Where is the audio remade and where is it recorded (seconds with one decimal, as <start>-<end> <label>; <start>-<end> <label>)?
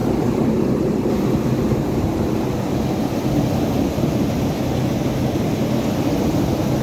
0.0-6.8 recorded